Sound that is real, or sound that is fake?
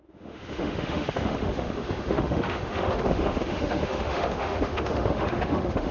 fake